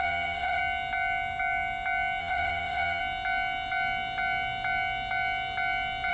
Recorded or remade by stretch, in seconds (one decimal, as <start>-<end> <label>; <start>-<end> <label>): 0.0-0.6 remade; 0.6-2.2 recorded; 2.2-3.0 remade; 3.0-6.1 recorded